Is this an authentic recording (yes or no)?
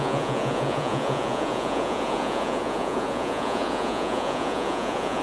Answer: no